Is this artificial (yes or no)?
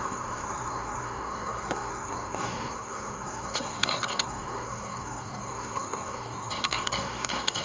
yes